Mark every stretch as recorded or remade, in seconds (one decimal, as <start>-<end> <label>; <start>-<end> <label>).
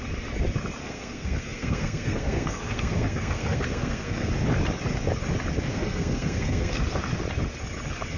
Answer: 0.0-0.8 recorded; 0.8-4.3 remade; 4.3-5.7 recorded; 5.7-6.8 remade; 6.8-8.2 recorded